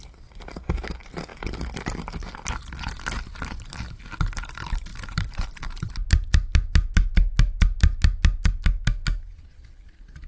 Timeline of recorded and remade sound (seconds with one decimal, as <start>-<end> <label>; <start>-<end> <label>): 0.0-4.9 recorded; 4.9-5.9 remade; 5.9-10.3 recorded